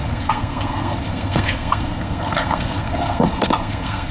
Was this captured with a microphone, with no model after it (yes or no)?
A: no